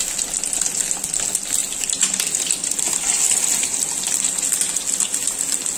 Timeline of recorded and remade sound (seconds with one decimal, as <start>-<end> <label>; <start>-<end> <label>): 0.0-5.8 recorded